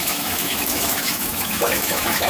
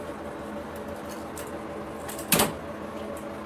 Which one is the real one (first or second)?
second